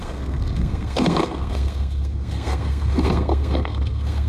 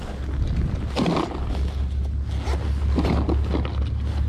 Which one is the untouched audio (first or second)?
second